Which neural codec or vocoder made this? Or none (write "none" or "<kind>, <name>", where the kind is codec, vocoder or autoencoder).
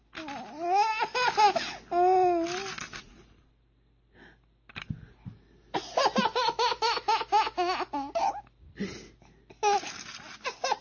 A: none